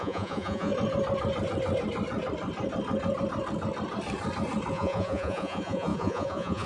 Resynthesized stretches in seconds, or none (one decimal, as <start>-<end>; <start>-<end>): 0.0-0.7; 4.7-6.7